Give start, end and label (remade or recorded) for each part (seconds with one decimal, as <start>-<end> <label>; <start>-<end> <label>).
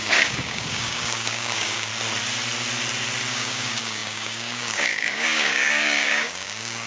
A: 0.0-1.9 remade; 1.9-3.3 recorded; 3.3-6.9 remade